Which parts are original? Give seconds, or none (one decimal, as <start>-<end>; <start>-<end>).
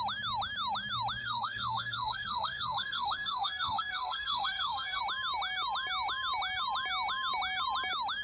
0.0-1.2; 5.0-8.2